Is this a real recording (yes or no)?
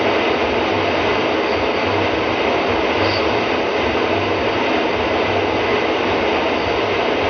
yes